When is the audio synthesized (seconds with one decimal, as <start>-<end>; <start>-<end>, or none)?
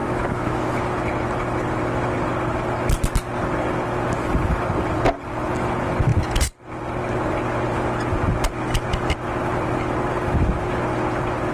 0.0-0.8